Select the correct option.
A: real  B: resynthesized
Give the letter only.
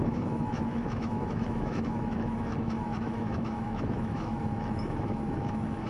B